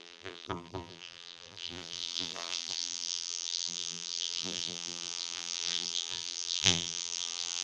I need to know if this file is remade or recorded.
remade